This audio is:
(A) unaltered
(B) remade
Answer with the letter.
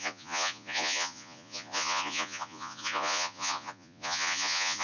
B